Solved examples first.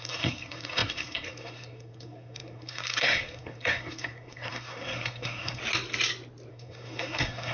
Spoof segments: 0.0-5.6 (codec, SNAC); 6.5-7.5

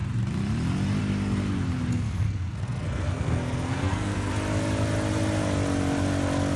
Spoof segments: 1.9-4.3 (codec, SNAC)

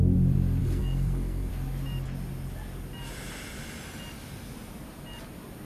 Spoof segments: 0.6-1.5 (codec, SNAC)

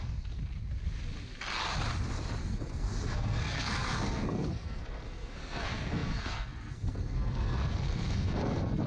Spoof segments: 0.0-0.4 (codec, SNAC); 2.4-8.9

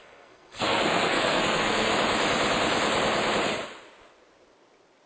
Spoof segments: 0.0-1.9 (codec, SNAC)

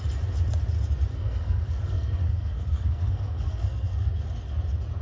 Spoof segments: 1.1-4.1 (codec, SNAC)

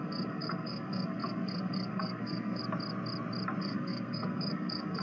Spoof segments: 0.0-2.6 (codec, SNAC); 3.6-5.0